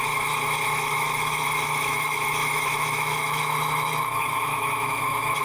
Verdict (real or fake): fake